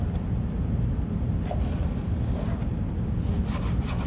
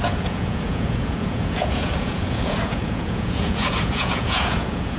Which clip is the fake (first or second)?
second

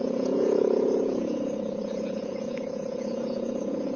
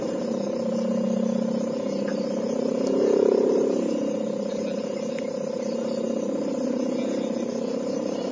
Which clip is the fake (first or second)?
first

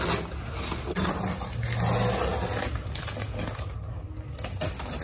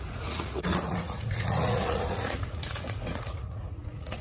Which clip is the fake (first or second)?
second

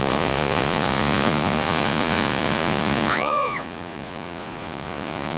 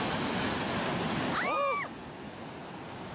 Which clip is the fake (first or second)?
first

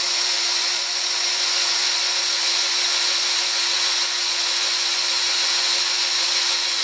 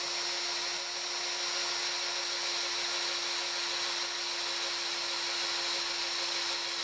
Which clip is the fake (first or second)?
first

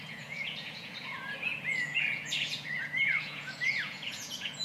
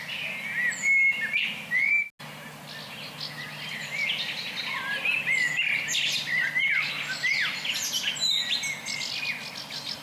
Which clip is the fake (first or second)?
first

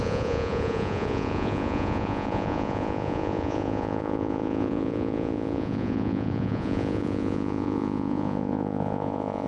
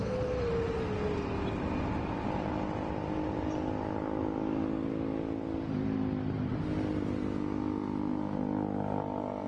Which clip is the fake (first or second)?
first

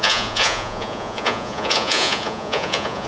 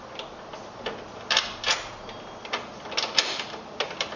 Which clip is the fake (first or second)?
first